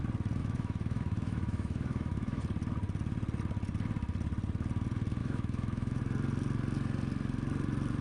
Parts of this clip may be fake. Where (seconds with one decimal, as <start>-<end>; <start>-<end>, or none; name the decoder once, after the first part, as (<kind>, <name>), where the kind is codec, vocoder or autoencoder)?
0.4-2.4 (autoencoder, DAC-VAE); 5.2-6.0